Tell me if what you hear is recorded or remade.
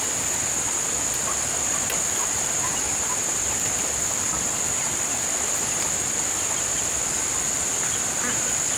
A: recorded